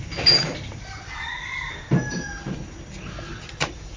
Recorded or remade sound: recorded